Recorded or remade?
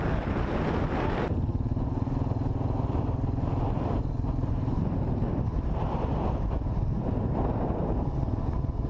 recorded